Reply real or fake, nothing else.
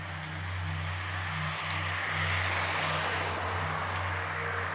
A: real